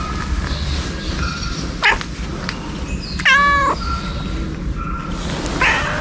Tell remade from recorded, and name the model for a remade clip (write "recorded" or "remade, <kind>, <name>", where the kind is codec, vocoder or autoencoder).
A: recorded